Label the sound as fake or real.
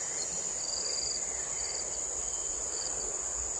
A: real